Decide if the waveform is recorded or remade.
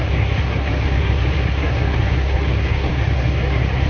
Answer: remade